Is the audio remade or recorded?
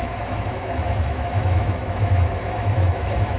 remade